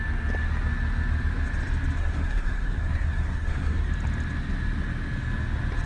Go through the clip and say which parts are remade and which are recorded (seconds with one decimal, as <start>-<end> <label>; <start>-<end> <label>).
0.0-2.0 recorded; 2.0-3.9 remade; 3.9-5.9 recorded